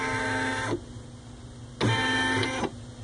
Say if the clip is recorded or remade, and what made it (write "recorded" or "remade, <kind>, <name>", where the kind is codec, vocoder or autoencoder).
recorded